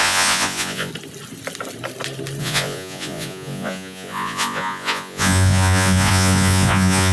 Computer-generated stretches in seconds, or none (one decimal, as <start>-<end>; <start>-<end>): 0.0-0.9; 2.4-7.1